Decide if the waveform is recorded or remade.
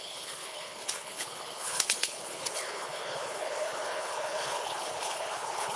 remade